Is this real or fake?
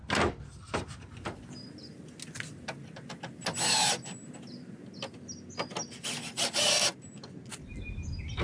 real